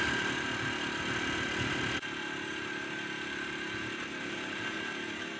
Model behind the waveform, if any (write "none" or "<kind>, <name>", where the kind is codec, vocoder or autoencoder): vocoder, BigVGAN v2